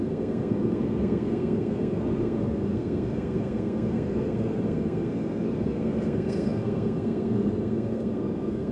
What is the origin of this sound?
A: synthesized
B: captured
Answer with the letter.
A